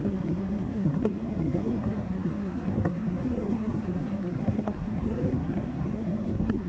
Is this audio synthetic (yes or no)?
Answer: yes